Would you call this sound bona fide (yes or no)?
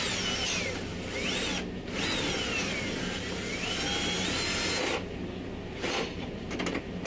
yes